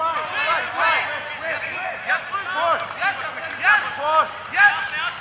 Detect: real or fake real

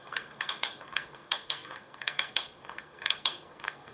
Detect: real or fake fake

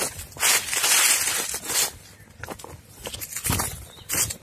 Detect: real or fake real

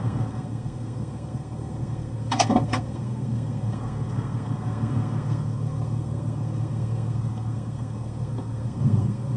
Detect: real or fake fake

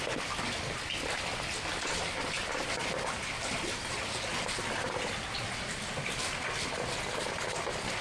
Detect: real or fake real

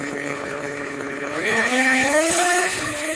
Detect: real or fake fake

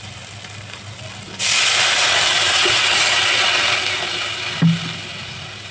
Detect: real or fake real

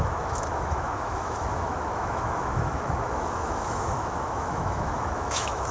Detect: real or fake fake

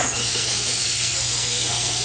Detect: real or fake fake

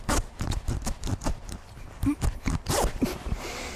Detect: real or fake fake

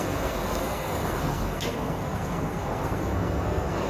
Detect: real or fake fake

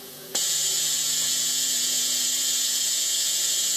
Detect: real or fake fake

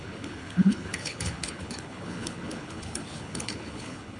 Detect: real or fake fake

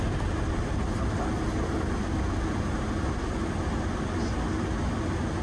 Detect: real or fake real